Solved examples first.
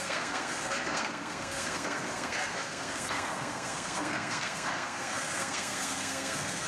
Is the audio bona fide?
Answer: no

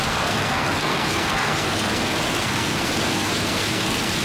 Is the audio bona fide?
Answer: no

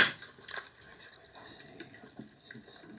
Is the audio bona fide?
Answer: yes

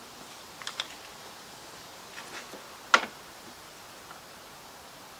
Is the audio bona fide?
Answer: yes